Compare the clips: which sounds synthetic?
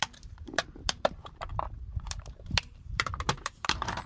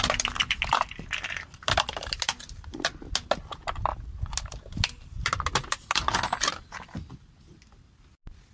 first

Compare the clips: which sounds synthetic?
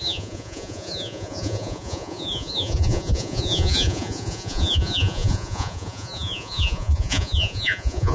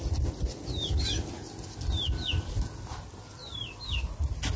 first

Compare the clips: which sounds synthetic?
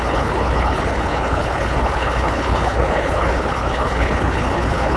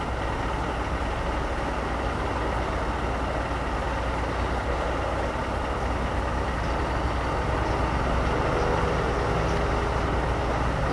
first